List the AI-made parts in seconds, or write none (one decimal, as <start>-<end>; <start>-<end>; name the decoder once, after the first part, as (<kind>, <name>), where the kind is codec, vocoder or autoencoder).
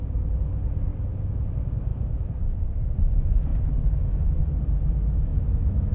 5.3-5.9 (autoencoder, DAC-VAE)